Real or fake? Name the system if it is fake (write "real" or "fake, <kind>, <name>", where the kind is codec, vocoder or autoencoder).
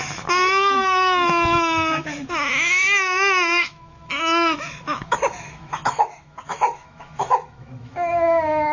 fake, autoencoder, DAC-VAE